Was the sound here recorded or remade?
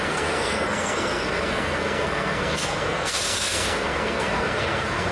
remade